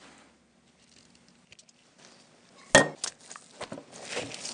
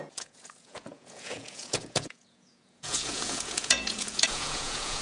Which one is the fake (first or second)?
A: second